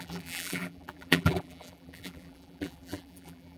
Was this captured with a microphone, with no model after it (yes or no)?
no